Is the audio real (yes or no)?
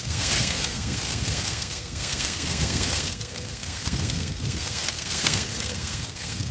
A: no